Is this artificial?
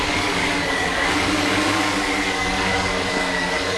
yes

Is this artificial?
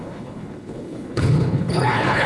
yes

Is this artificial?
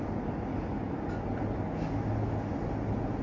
no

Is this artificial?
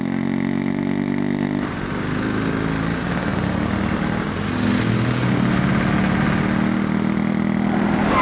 no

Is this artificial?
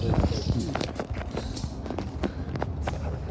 no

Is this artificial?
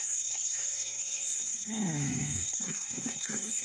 yes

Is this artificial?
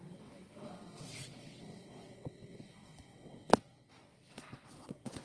yes